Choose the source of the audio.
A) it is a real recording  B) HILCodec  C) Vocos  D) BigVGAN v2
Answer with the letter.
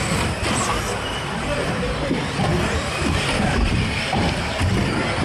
D